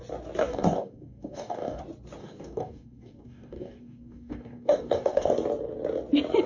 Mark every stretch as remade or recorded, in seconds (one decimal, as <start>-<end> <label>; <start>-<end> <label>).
0.0-0.4 recorded; 0.4-1.8 remade; 1.8-2.2 recorded; 2.2-5.3 remade; 5.3-6.5 recorded